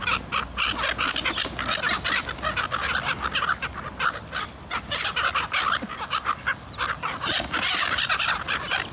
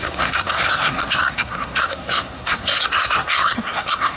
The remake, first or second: second